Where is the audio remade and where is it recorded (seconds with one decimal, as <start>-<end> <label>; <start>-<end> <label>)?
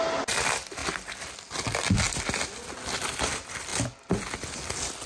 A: 0.0-5.1 recorded